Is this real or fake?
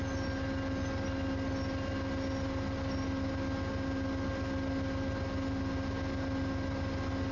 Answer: real